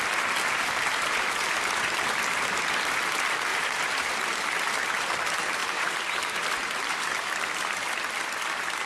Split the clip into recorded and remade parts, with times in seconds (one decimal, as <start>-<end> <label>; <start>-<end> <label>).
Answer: 0.0-3.5 recorded; 3.5-4.1 remade; 4.1-5.6 recorded; 5.6-7.0 remade; 7.0-8.9 recorded